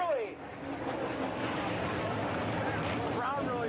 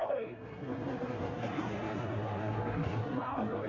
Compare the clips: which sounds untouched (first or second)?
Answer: first